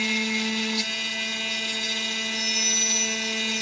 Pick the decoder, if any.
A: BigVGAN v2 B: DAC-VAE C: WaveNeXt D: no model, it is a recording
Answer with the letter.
D